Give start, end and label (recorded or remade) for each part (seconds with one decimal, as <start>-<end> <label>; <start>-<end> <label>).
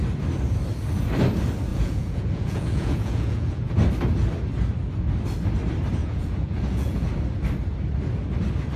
0.0-1.7 recorded; 1.7-3.6 remade; 3.6-6.0 recorded; 6.0-7.1 remade; 7.1-8.8 recorded